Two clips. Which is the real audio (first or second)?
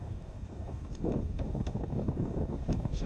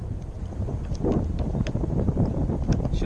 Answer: second